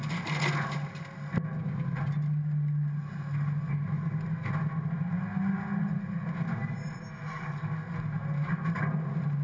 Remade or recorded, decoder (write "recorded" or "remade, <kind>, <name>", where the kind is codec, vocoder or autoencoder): recorded